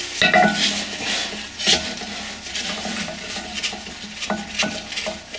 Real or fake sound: real